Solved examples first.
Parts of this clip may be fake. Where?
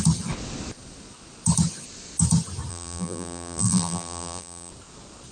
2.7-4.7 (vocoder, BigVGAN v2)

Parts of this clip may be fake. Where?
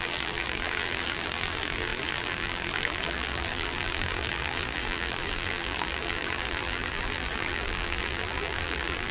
0.0-9.1 (vocoder, BigVGAN v2)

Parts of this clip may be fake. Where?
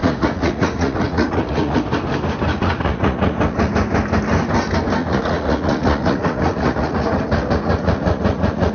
0.0-1.8 (vocoder, Vocos); 2.5-3.7; 5.0-8.7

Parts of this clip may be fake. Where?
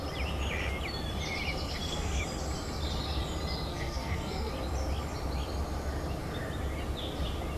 1.7-2.2 (codec, SNAC); 3.7-4.5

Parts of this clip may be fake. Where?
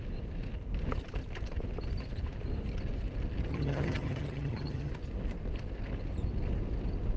3.5-4.9 (vocoder, HiFi-GAN)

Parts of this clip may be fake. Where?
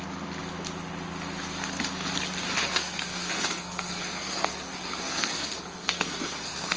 2.6-6.8 (codec, SNAC)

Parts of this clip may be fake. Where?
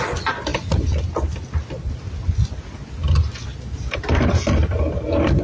none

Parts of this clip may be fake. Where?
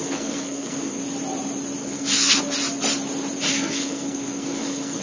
0.0-1.0 (codec, SNAC); 1.8-2.4; 3.5-5.0